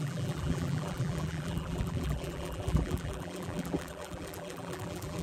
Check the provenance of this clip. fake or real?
fake